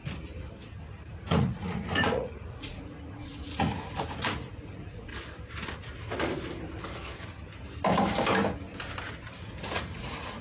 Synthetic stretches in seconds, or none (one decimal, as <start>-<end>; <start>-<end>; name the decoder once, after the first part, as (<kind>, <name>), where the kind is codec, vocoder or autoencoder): 1.0-5.1 (vocoder, Vocos); 9.7-10.4